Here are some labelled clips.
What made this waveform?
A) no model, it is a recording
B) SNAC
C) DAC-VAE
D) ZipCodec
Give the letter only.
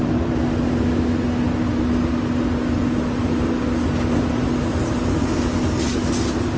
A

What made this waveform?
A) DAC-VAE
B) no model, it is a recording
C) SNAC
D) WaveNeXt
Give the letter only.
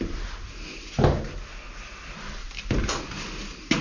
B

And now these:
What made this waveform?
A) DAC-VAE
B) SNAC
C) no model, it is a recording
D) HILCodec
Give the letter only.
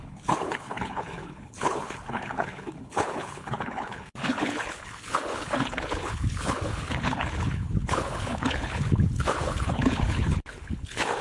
D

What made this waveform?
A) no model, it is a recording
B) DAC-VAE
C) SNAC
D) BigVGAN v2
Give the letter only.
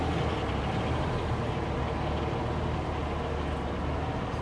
A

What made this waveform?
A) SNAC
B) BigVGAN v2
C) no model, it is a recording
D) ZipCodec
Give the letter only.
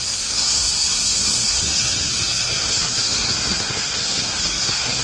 A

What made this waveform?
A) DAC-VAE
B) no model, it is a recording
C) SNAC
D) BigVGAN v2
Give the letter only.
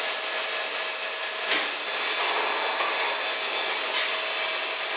B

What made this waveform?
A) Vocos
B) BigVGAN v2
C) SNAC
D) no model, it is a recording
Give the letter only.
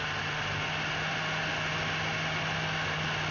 D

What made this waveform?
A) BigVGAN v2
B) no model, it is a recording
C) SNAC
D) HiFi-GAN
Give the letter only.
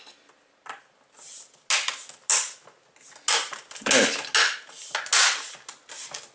B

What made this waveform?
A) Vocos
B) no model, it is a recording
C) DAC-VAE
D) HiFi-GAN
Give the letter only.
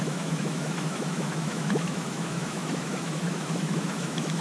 C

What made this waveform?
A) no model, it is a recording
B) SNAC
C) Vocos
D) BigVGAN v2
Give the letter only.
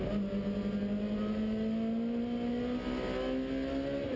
A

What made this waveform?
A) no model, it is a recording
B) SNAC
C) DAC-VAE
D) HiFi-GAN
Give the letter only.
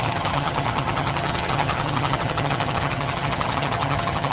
D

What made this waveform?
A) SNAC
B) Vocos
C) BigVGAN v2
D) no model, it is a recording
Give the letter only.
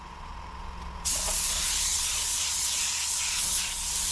B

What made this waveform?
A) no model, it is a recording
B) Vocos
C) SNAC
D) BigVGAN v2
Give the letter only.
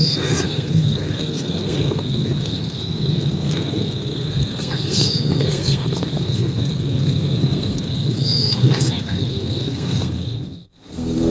C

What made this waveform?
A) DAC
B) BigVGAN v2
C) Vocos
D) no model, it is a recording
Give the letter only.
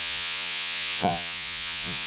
C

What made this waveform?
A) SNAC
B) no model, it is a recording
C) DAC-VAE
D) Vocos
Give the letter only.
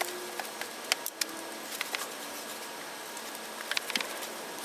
B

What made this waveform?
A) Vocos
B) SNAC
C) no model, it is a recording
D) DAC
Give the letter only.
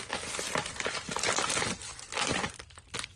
C